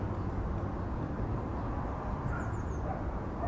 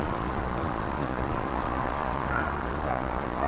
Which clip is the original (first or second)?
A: first